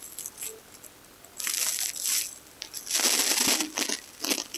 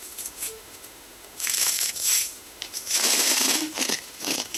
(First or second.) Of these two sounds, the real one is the first